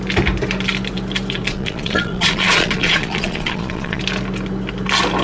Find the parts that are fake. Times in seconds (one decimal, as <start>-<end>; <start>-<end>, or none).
1.5-4.0